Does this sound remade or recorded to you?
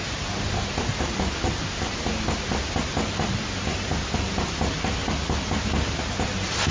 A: recorded